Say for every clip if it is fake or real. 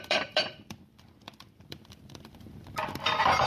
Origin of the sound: fake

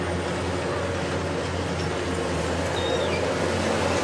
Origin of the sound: real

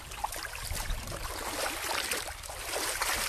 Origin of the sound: fake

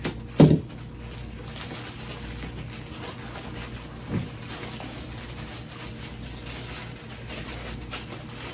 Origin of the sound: real